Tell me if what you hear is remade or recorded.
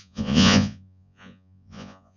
remade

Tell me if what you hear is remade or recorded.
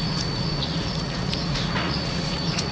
remade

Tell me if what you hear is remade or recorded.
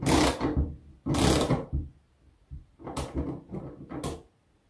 recorded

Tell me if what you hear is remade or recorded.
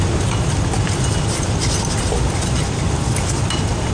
recorded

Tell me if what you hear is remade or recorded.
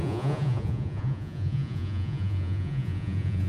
remade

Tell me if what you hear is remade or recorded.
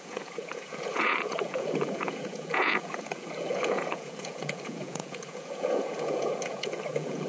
remade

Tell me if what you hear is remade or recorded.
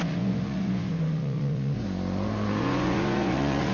remade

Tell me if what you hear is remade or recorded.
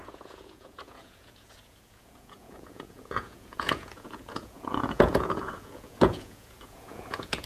remade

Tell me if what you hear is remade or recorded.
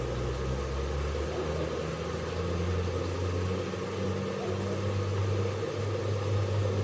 recorded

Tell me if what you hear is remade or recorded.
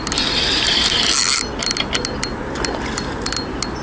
recorded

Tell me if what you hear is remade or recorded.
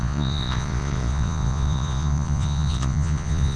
remade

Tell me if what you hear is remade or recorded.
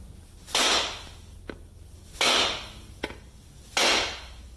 recorded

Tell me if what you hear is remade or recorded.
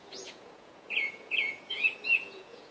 remade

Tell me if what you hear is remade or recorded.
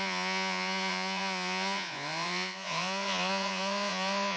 remade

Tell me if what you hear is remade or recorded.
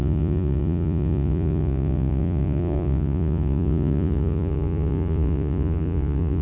remade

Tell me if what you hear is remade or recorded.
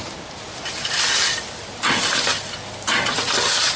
recorded